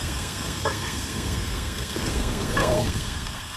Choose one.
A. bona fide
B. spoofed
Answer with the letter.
B